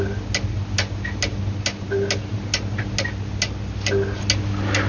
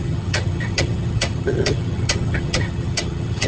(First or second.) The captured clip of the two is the first